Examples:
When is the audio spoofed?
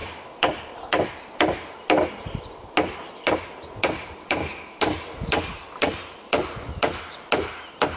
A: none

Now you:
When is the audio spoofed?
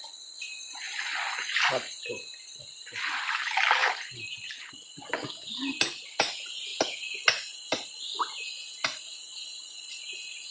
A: none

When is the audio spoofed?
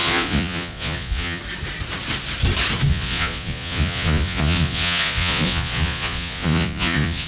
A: 0.0-1.4 (vocoder, Vocos); 2.9-7.3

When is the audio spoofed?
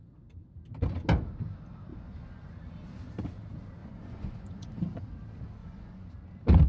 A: 1.9-2.5 (vocoder, Vocos); 3.8-5.1; 5.6-6.1